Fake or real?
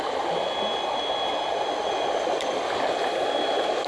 real